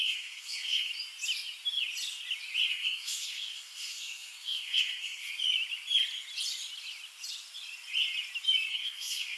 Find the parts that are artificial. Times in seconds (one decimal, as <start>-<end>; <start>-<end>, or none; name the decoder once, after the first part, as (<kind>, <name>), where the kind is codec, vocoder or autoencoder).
0.0-0.9 (codec, SNAC); 2.7-5.3; 8.7-9.4